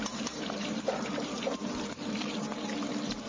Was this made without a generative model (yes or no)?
no